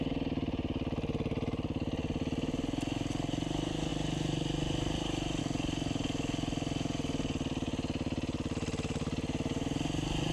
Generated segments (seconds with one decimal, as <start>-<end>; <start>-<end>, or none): none